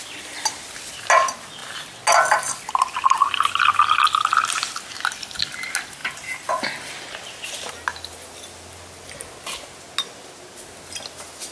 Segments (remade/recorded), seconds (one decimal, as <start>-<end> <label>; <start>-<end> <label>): 0.0-11.5 recorded